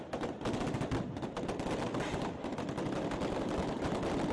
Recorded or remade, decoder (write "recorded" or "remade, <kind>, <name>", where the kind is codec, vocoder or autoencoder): recorded